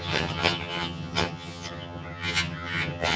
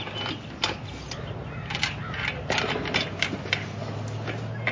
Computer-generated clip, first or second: first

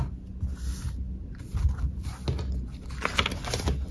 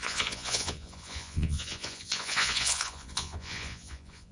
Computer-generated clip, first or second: second